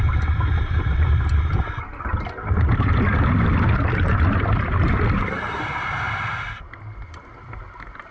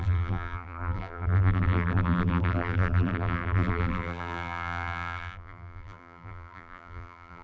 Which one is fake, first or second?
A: second